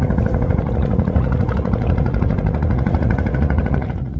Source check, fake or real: fake